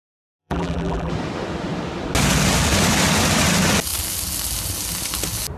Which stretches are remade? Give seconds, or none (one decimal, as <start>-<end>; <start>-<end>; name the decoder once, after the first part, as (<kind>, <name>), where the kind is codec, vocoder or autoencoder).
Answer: 0.4-1.1 (vocoder, BigVGAN v2)